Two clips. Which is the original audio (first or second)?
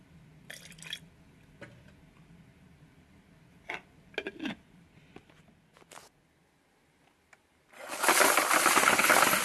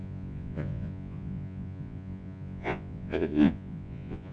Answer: first